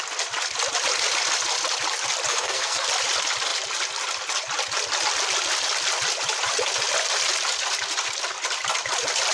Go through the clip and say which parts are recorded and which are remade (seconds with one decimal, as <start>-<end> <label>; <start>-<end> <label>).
0.0-2.3 recorded; 2.3-2.9 remade; 2.9-9.3 recorded